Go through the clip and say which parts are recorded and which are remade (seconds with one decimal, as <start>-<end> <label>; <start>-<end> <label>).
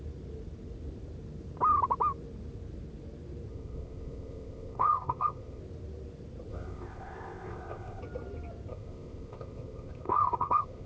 0.0-3.5 recorded; 3.5-5.6 remade; 5.6-6.5 recorded; 6.5-8.0 remade; 8.0-8.7 recorded; 8.7-10.9 remade